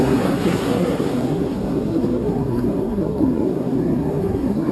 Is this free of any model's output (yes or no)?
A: no